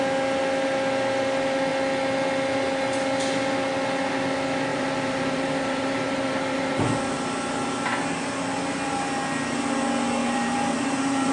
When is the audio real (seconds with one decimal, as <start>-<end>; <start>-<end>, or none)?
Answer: 0.0-4.7; 6.8-10.2